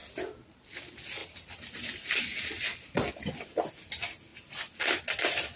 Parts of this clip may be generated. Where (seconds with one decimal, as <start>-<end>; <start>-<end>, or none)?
none